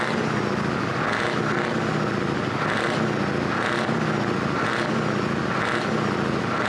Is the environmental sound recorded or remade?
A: recorded